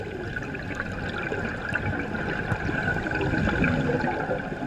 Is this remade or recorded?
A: recorded